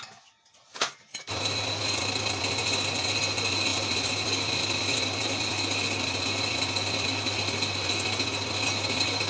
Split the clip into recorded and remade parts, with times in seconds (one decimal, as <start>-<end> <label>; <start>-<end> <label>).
0.0-9.3 recorded